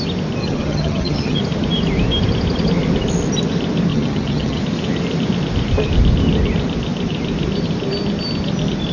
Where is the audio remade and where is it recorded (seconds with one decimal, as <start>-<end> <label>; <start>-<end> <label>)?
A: 0.0-0.4 recorded; 0.4-1.4 remade; 1.4-3.9 recorded; 3.9-4.6 remade; 4.6-8.9 recorded